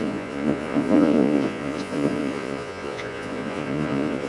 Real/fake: fake